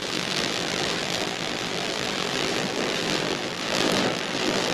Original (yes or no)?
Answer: no